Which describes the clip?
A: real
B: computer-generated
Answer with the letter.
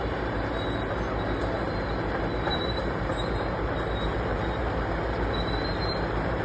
B